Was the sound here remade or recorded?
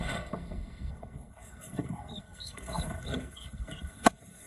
remade